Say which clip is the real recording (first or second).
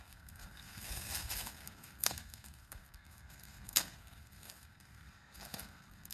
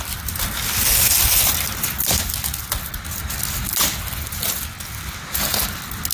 second